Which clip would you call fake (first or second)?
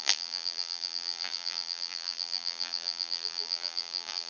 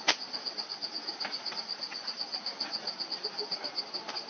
first